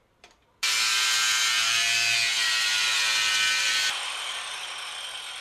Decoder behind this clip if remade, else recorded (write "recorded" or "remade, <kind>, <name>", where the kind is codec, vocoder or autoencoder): recorded